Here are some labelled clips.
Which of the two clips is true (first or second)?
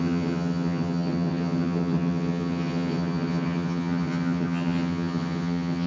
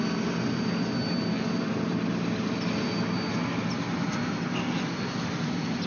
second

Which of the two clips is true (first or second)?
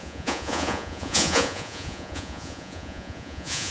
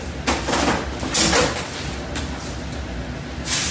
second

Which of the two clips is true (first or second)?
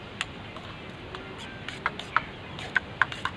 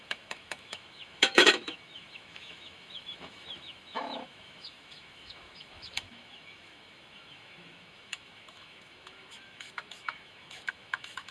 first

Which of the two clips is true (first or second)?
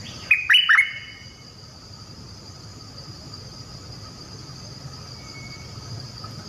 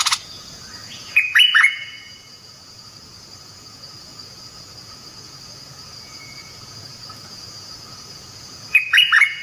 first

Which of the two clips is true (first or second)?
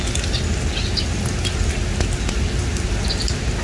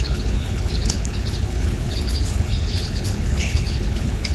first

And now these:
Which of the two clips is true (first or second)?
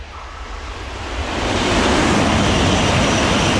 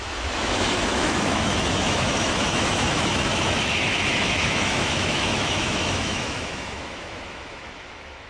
first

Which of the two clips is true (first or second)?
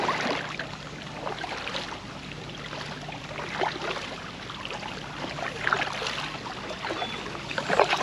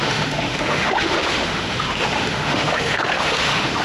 first